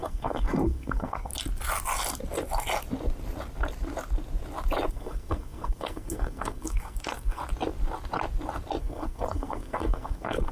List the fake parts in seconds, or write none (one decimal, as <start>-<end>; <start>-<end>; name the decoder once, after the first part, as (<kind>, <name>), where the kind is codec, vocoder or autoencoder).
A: 0.0-1.3 (codec, SNAC); 4.9-7.4; 8.8-10.5